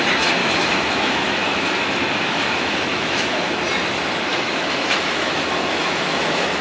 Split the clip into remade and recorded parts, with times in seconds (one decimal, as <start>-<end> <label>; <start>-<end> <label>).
0.0-0.4 recorded; 0.4-3.5 remade; 3.5-4.3 recorded; 4.3-6.6 remade